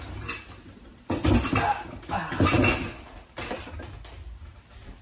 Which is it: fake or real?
real